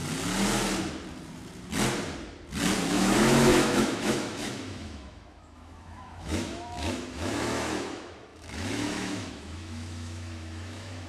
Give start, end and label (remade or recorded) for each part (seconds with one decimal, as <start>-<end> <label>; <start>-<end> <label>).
0.0-2.9 recorded; 2.9-11.1 remade